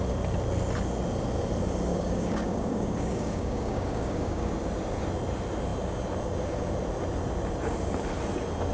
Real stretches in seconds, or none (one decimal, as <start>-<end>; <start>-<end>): 0.0-1.9; 4.5-8.7